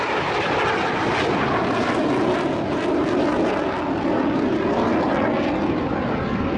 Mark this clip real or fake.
real